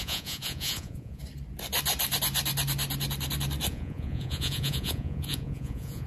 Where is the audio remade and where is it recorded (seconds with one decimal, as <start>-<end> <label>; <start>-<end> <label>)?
0.0-1.2 remade; 1.2-3.7 recorded; 3.7-6.1 remade